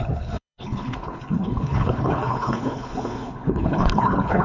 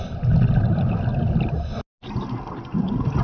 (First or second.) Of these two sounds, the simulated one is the first